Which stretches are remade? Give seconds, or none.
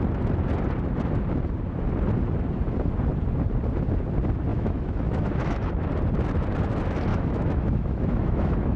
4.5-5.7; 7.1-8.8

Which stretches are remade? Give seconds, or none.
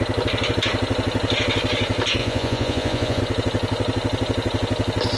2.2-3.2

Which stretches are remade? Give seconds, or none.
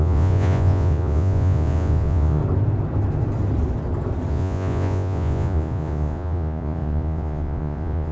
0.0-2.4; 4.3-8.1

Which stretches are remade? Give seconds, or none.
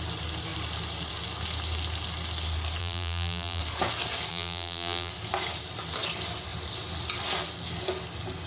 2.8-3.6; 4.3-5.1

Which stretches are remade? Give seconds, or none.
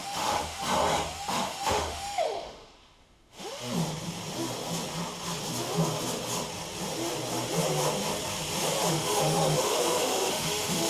0.0-0.6; 1.3-3.6; 8.9-10.9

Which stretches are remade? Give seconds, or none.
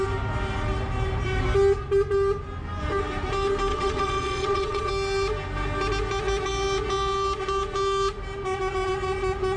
3.7-4.9